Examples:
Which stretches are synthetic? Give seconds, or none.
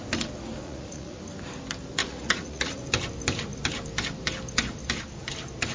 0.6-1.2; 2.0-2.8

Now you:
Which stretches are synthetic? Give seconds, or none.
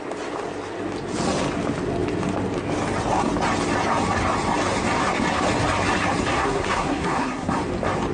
6.3-7.6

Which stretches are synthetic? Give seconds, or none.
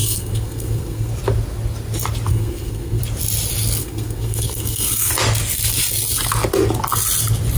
0.0-1.1; 2.3-3.0; 3.8-5.1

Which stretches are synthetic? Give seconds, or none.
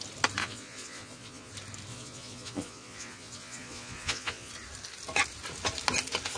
0.4-1.5; 1.9-4.5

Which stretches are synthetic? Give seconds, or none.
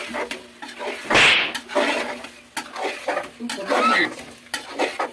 none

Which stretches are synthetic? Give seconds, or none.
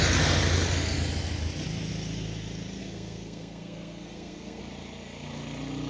2.8-4.6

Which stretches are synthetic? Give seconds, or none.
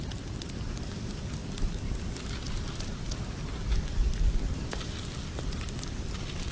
none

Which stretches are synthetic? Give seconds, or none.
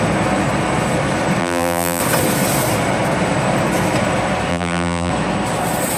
1.4-2.0; 4.5-5.1